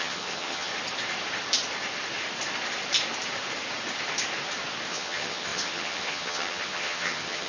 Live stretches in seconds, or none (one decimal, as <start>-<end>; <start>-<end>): 0.7-4.9